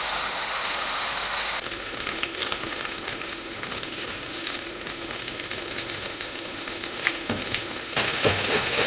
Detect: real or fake fake